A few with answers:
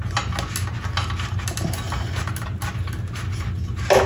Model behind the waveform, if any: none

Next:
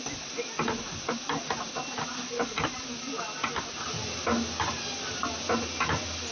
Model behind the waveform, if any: none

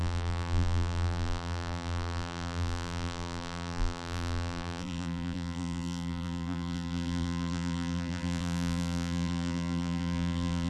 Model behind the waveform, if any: vocoder, BigVGAN v2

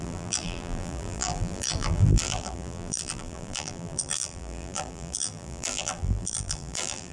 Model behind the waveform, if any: vocoder, BigVGAN v2